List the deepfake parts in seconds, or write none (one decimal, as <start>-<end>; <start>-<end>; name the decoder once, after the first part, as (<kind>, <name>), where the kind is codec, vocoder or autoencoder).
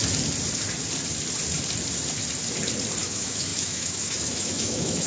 3.0-5.1 (autoencoder, DAC-VAE)